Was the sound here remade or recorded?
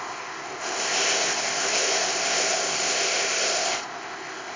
remade